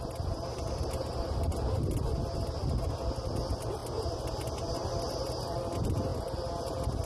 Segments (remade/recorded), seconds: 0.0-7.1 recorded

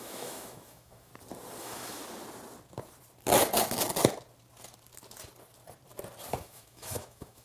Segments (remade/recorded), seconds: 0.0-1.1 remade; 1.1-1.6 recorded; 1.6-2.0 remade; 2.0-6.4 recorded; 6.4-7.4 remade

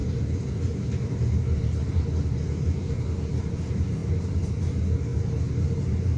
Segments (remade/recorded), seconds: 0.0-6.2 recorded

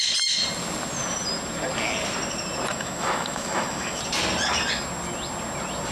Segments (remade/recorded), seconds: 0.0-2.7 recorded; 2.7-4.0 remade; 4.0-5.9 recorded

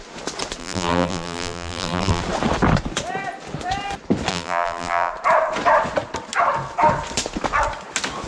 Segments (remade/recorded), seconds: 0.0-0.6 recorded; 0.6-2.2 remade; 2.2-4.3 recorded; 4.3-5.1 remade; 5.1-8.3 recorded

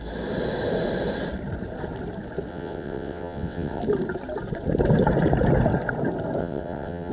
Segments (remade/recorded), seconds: 0.0-2.5 recorded; 2.5-3.8 remade; 3.8-6.4 recorded; 6.4-7.1 remade

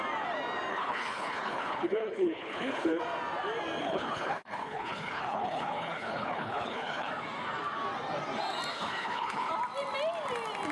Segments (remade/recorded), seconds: 0.0-0.7 recorded; 0.7-3.0 remade; 3.0-3.8 recorded; 3.8-7.1 remade; 7.1-8.7 recorded; 8.7-9.5 remade; 9.5-10.7 recorded